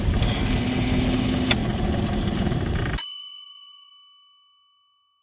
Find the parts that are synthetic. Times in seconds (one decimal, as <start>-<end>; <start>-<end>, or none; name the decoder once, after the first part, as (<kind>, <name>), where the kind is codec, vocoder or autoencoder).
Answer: 1.6-3.9 (vocoder, BigVGAN v2)